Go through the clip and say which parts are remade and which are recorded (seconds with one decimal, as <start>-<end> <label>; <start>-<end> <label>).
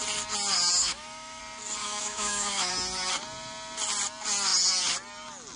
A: 0.0-0.8 recorded; 0.8-1.4 remade; 1.4-1.8 recorded; 1.8-2.7 remade; 2.7-5.6 recorded